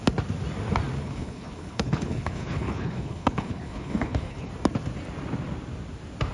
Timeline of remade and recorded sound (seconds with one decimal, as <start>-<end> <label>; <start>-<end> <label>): 0.0-1.0 recorded; 1.0-4.5 remade; 4.5-6.3 recorded